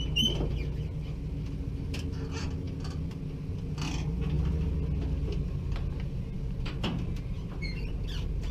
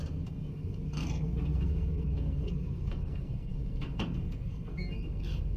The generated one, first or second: second